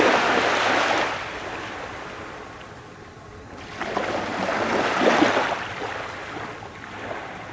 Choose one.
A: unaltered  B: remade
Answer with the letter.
A